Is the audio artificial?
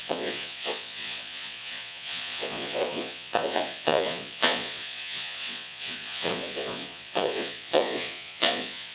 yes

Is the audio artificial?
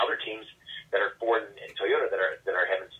no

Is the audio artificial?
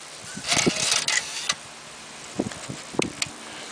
no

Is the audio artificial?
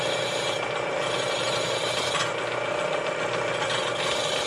no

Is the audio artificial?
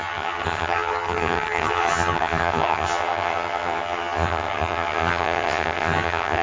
yes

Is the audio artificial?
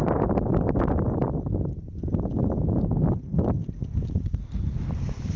no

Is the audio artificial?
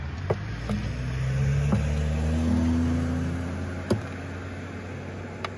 no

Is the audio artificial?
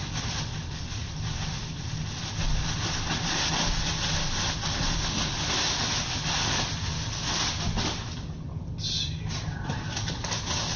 no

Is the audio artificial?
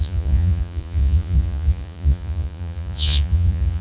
yes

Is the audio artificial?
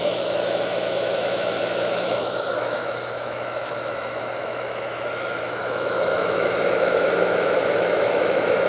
yes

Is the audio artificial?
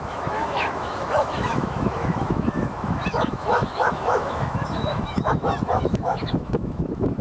yes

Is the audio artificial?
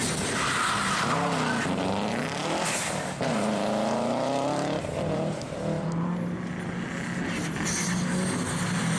no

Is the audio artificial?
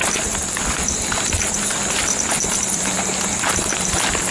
no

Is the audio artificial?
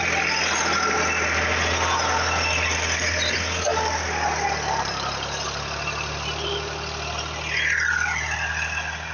no